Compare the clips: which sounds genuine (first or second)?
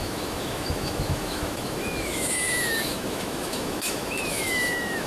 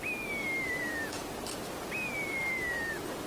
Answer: second